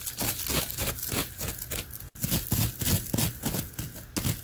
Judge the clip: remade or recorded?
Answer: recorded